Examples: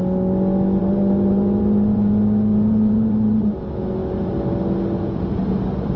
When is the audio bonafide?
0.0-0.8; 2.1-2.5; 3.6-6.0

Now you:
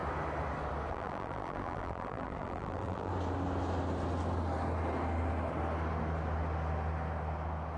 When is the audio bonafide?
0.0-0.9; 3.1-7.8